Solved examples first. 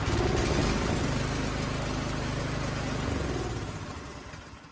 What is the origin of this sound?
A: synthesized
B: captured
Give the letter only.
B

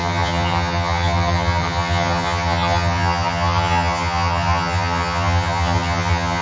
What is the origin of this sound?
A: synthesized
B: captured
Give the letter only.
A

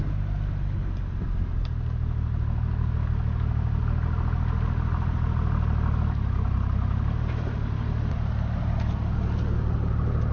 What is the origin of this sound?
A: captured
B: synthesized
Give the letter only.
A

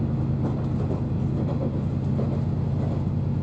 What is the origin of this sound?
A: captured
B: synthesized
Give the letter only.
A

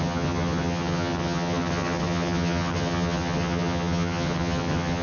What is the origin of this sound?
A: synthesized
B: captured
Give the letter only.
A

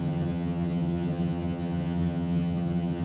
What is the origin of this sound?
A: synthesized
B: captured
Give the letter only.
A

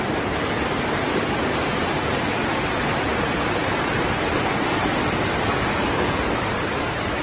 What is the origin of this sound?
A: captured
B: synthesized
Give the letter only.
A